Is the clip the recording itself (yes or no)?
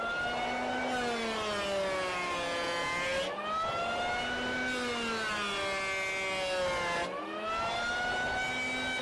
yes